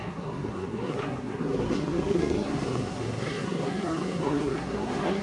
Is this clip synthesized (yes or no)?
yes